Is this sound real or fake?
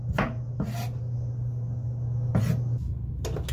real